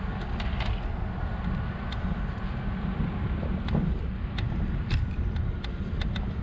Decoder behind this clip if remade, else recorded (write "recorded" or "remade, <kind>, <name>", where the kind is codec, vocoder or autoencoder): recorded